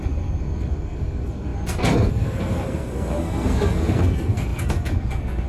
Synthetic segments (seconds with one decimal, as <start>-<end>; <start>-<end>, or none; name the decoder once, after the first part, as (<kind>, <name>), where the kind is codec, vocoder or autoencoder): 0.0-5.5 (codec, SNAC)